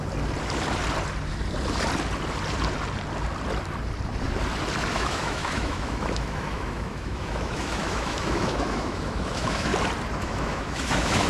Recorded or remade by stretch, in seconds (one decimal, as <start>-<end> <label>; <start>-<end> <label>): 0.0-4.9 recorded; 4.9-9.7 remade; 9.7-10.2 recorded; 10.2-11.3 remade